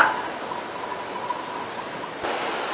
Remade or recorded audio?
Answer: recorded